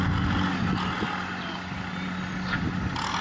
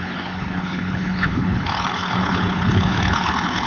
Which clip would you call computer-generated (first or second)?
second